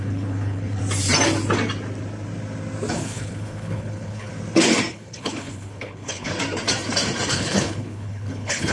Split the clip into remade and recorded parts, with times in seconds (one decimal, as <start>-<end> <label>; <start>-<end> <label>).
0.0-0.8 remade; 0.8-2.9 recorded; 2.9-4.3 remade; 4.3-4.9 recorded; 4.9-6.3 remade; 6.3-7.3 recorded; 7.3-8.7 remade